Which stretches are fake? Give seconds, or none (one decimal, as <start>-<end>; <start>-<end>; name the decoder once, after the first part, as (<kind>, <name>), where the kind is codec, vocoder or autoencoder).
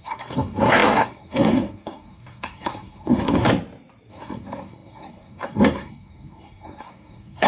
0.0-3.5 (codec, SNAC); 4.1-7.5